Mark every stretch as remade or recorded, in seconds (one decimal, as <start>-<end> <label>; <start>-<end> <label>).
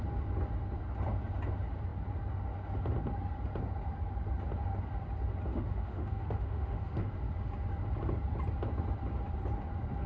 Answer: 0.0-5.5 recorded; 5.5-7.0 remade; 7.0-10.1 recorded